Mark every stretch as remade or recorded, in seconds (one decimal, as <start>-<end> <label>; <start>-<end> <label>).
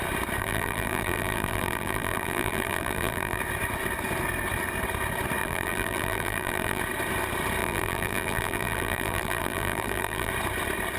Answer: 0.0-0.4 recorded; 0.4-3.4 remade; 3.4-5.4 recorded; 5.4-6.8 remade; 6.8-7.6 recorded; 7.6-10.3 remade; 10.3-11.0 recorded